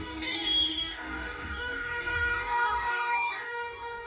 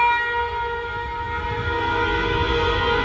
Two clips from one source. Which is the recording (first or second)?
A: second